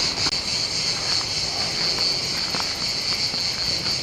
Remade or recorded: recorded